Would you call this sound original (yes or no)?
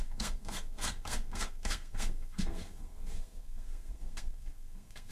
no